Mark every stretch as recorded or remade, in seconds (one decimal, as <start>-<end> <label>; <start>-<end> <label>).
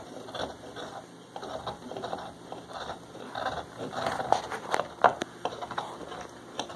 0.0-5.1 remade; 5.1-6.8 recorded